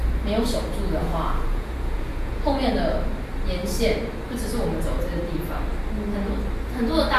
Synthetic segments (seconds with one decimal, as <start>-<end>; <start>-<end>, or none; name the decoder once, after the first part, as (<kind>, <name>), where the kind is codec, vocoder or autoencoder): 1.0-2.7 (vocoder, Vocos)